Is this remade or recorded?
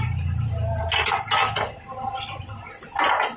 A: recorded